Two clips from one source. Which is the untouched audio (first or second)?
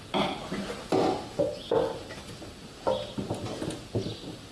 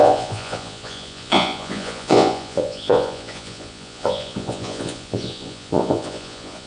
first